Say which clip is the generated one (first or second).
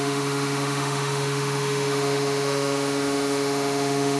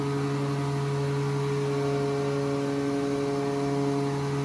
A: first